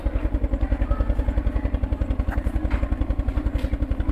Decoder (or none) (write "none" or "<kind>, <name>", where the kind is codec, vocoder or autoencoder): none